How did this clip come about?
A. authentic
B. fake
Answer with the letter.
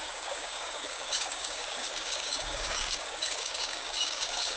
B